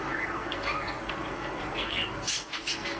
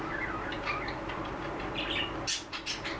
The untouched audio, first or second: second